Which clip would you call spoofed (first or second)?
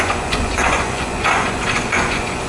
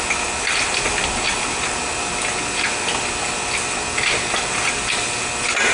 first